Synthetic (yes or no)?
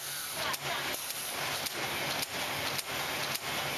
no